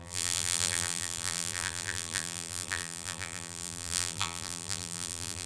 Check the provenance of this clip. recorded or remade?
remade